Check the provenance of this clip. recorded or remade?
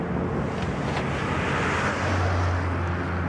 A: recorded